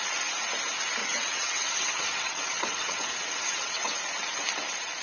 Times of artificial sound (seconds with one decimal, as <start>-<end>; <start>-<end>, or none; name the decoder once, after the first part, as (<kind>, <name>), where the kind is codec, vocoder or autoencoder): 1.0-4.0 (vocoder, WaveNeXt)